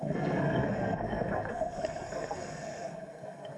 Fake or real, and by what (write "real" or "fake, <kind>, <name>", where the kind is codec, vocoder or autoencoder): fake, codec, SNAC